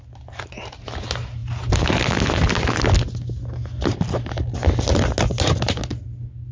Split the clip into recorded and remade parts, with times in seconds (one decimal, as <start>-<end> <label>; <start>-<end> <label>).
0.0-6.5 recorded